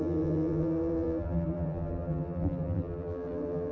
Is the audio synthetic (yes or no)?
yes